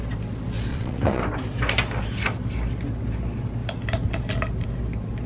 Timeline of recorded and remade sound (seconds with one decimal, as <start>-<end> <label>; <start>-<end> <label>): 0.0-0.7 recorded; 0.7-1.2 remade; 1.2-5.3 recorded